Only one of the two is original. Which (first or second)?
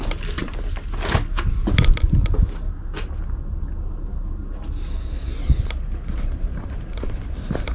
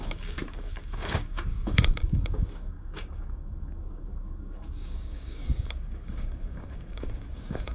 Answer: first